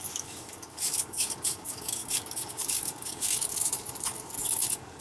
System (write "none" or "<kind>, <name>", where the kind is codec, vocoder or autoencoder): codec, DAC